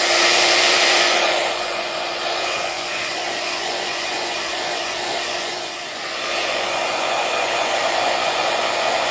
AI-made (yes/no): yes